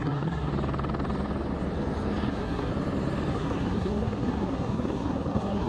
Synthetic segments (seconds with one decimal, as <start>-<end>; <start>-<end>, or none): 0.0-0.5; 2.3-2.7; 3.3-5.7